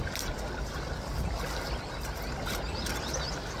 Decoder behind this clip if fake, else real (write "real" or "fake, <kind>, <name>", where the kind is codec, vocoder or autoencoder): real